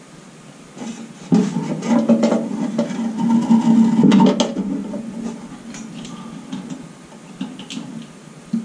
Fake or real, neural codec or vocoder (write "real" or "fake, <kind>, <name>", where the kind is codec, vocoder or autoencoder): real